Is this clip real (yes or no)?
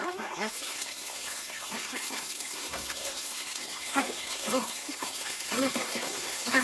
no